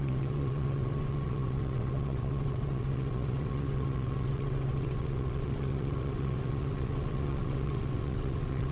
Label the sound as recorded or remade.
remade